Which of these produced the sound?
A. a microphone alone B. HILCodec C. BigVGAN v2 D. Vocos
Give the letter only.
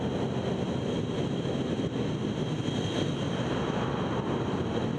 A